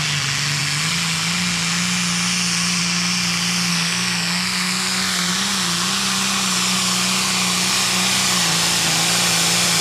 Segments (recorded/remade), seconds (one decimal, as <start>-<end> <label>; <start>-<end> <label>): 0.0-3.7 recorded; 3.7-5.3 remade; 5.3-9.8 recorded

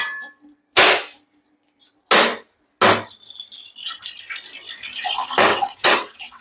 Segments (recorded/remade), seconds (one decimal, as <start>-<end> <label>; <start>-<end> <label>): 0.0-5.5 recorded; 5.5-6.4 remade

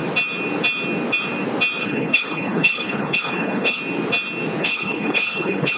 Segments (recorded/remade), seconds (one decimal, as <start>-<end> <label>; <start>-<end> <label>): 0.0-1.8 recorded; 1.8-3.8 remade; 3.8-4.6 recorded; 4.6-5.8 remade

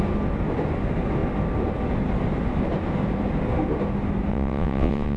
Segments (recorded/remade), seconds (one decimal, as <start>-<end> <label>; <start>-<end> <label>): 0.0-4.3 recorded; 4.3-5.2 remade

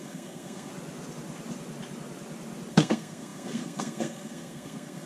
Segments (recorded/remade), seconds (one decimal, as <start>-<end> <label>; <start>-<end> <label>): 0.0-0.7 remade; 0.7-2.7 recorded; 2.7-5.1 remade

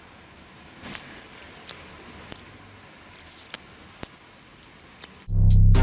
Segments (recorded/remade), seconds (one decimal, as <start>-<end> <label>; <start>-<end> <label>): 0.0-5.8 recorded